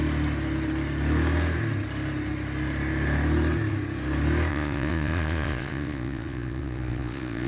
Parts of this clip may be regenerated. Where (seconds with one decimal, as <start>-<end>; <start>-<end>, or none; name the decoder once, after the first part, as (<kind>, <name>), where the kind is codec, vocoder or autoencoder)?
4.5-7.5 (vocoder, Vocos)

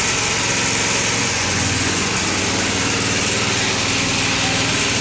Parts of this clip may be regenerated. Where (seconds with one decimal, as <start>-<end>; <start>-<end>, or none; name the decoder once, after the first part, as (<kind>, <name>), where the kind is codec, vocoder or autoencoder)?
1.2-2.1 (vocoder, Vocos)